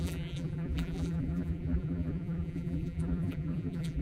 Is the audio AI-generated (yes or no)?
yes